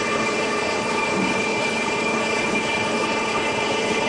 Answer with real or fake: fake